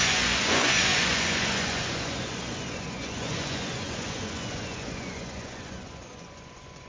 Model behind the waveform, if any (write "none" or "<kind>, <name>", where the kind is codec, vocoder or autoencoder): vocoder, Vocos